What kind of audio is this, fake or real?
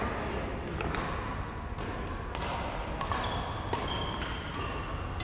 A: real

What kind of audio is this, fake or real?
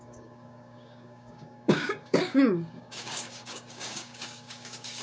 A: fake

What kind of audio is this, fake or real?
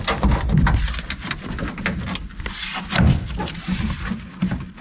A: real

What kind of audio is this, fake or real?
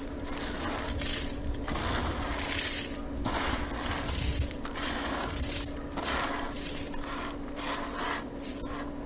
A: real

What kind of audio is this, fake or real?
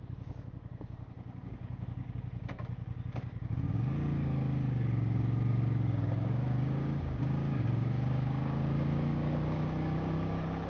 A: fake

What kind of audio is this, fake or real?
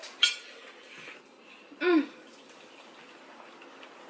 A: real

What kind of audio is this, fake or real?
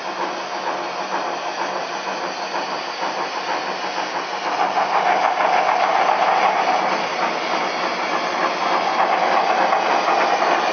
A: real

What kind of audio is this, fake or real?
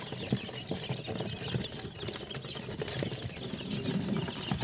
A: real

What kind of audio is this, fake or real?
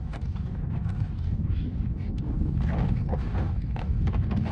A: fake